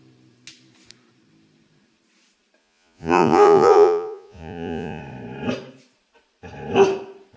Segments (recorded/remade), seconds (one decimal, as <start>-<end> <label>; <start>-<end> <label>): 0.0-2.6 recorded; 2.6-5.0 remade; 5.0-7.4 recorded